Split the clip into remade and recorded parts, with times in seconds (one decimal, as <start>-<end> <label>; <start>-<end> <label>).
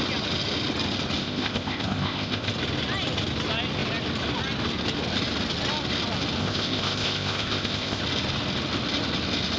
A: 0.0-1.2 recorded; 1.2-2.5 remade; 2.5-6.4 recorded; 6.4-8.0 remade; 8.0-9.6 recorded